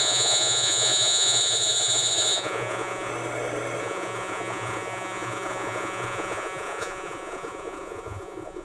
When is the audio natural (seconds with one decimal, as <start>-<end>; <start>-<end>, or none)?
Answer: 3.1-3.8

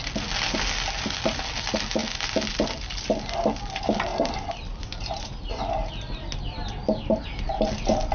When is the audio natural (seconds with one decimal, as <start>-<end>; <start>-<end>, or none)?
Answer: 0.0-8.1

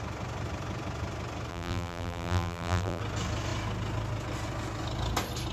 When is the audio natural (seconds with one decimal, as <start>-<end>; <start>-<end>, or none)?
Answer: 0.0-1.5; 3.0-5.5

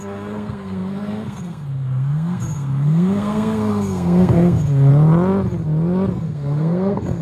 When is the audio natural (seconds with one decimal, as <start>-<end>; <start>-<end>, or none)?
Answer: 4.9-6.1

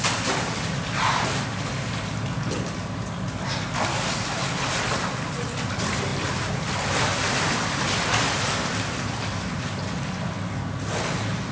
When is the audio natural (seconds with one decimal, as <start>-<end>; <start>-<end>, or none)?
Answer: 0.0-11.5